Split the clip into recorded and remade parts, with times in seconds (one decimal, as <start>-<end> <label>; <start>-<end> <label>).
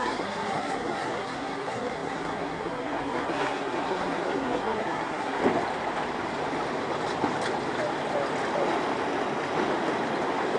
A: 0.0-5.4 remade; 5.4-10.6 recorded